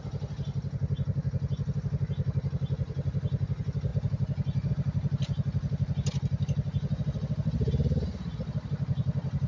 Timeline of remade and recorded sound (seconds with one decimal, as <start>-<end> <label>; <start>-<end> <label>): 0.0-9.5 recorded